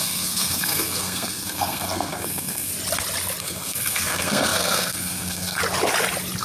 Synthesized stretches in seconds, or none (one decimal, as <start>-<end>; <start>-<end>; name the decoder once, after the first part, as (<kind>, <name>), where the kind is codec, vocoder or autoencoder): 0.0-2.7 (codec, SNAC); 3.4-5.6

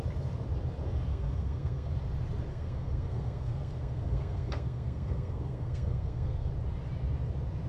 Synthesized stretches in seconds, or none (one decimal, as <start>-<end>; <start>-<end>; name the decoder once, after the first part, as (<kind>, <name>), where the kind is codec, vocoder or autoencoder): 1.1-1.9 (codec, SNAC); 2.5-6.5